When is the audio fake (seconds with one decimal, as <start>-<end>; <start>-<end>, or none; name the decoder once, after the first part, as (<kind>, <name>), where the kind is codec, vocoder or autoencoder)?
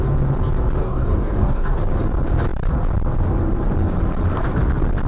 0.8-1.9 (codec, DAC)